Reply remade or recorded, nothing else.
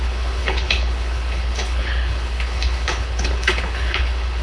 remade